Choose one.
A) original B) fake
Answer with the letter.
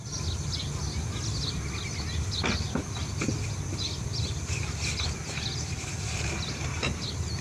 A